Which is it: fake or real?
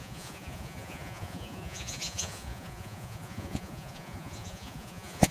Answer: fake